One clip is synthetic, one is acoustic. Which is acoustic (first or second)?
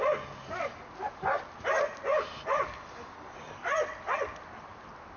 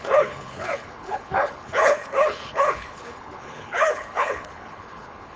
first